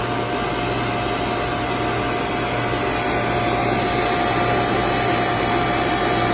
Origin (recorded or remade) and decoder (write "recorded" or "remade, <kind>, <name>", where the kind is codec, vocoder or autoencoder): recorded